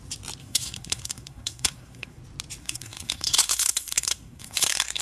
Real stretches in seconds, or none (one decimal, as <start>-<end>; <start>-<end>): 0.0-0.4; 2.2-2.6